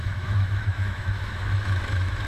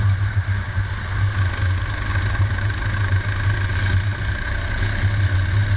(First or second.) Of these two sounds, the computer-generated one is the first